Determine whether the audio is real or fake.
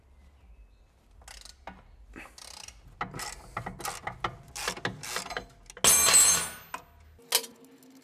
real